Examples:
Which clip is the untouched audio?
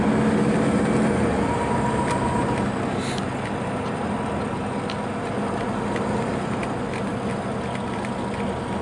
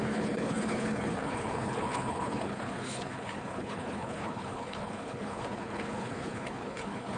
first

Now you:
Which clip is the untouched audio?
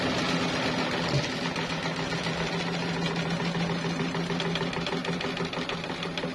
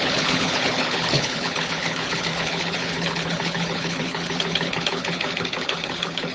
first